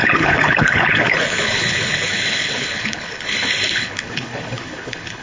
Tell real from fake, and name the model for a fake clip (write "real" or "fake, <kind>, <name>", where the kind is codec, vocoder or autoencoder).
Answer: fake, codec, HILCodec